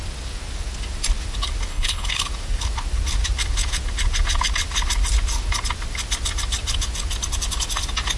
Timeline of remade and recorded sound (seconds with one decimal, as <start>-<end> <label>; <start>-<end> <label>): 0.0-1.7 recorded; 1.7-2.2 remade; 2.2-8.2 recorded